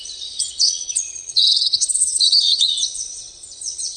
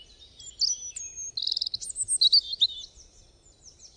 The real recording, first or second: second